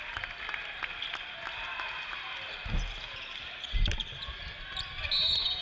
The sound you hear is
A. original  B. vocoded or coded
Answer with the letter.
A